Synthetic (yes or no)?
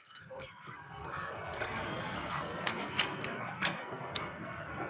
yes